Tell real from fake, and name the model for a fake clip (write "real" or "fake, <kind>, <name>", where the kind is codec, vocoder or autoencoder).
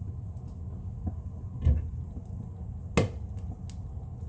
real